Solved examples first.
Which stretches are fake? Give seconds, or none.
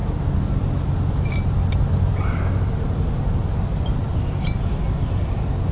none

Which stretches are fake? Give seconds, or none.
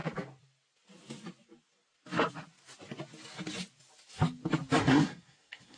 4.8-5.8 (codec, SNAC)